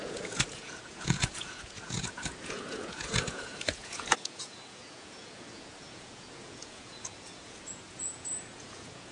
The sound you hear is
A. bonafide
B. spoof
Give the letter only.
B